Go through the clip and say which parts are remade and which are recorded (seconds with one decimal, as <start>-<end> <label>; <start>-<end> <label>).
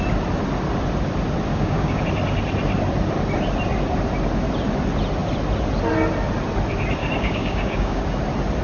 0.0-1.5 recorded; 1.5-2.0 remade; 2.0-7.0 recorded; 7.0-8.0 remade; 8.0-8.6 recorded